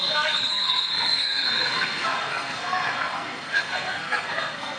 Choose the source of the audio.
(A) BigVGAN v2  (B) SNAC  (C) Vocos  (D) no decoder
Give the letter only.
B